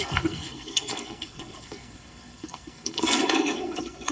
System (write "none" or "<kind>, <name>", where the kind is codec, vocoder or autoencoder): codec, SNAC